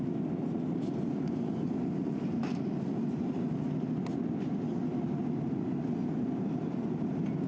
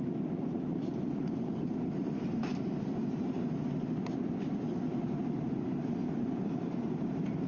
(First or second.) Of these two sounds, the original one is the first